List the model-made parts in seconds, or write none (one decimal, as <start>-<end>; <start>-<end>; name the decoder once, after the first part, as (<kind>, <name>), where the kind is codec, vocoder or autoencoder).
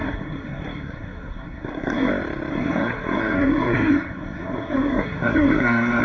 0.0-2.1 (codec, SNAC); 2.5-6.0